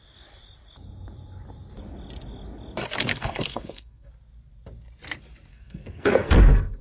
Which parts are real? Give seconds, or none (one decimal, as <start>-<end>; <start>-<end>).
0.0-3.1; 4.1-5.5